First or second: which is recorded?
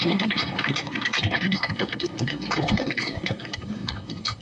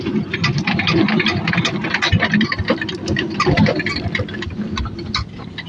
second